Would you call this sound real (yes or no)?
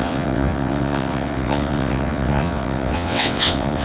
no